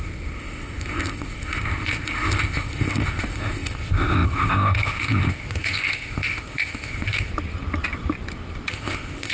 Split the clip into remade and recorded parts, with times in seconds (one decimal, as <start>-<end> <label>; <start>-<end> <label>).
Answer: 0.0-7.3 remade; 7.3-8.7 recorded; 8.7-9.3 remade